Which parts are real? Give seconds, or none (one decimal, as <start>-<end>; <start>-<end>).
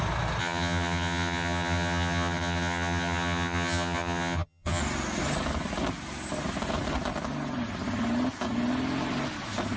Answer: 0.0-0.4; 4.8-9.8